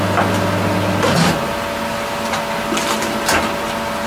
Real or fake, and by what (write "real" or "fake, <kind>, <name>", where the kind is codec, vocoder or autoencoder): real